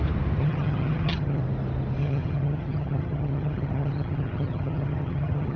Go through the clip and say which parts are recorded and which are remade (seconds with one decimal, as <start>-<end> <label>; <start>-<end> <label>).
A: 0.0-0.4 recorded; 0.4-1.4 remade; 1.4-2.0 recorded; 2.0-5.6 remade